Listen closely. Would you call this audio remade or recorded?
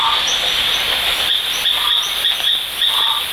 recorded